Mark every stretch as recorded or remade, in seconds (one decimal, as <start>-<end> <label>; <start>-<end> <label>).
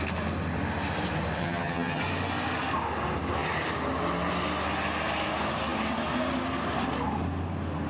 0.0-1.4 recorded; 1.4-2.0 remade; 2.0-7.9 recorded